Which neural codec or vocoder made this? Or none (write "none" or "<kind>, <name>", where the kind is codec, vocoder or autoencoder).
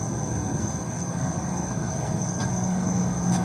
codec, SNAC